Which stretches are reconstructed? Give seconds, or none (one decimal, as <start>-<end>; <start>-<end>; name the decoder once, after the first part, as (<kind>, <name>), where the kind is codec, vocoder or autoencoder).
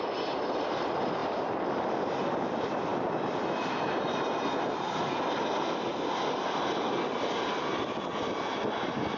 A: none